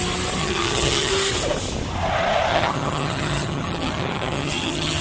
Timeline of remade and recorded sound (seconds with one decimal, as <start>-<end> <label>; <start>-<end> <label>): 0.0-0.4 recorded; 0.4-1.1 remade; 1.1-2.5 recorded; 2.5-5.0 remade